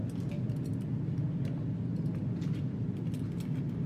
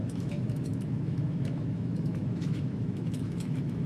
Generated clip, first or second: second